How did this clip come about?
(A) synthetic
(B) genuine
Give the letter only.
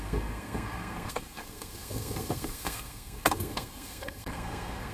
A